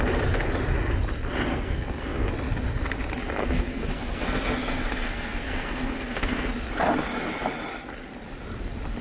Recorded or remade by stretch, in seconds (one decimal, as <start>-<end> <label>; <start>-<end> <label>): 0.0-1.5 recorded; 1.5-2.3 remade; 2.3-3.4 recorded; 3.4-6.5 remade; 6.5-9.0 recorded